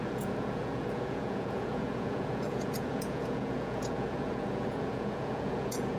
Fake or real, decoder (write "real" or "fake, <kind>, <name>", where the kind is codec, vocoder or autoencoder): fake, vocoder, Vocos